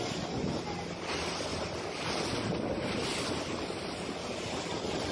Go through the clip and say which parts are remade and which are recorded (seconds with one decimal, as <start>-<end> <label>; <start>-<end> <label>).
0.0-5.1 recorded